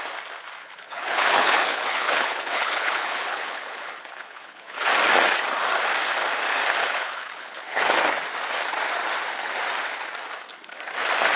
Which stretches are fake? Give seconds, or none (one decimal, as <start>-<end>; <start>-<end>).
0.6-4.9; 6.8-7.8